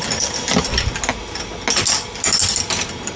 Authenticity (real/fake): real